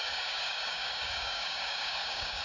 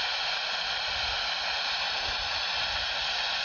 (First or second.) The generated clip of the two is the first